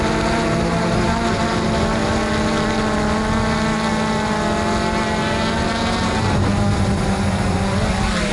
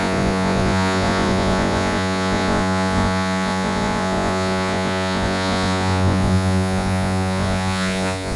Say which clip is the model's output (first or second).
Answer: second